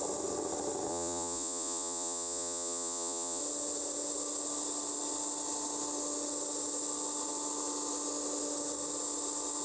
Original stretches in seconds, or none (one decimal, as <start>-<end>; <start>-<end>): 0.0-0.9; 3.4-9.6